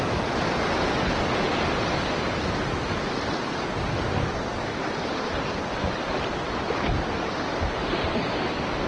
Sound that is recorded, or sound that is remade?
recorded